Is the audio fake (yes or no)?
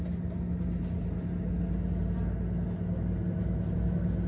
no